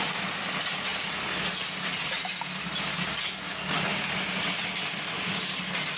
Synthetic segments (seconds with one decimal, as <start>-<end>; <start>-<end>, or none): none